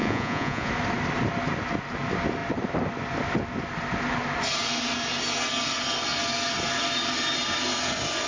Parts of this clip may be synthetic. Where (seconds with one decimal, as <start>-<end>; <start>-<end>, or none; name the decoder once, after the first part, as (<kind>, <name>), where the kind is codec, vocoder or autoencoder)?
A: 0.0-0.7 (vocoder, Vocos)